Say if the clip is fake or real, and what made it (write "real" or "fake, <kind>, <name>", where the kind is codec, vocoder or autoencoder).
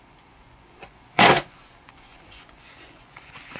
fake, vocoder, Vocos